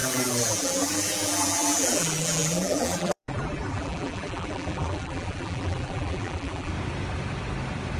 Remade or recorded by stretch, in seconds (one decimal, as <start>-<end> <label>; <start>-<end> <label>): 0.0-6.7 remade; 6.7-8.0 recorded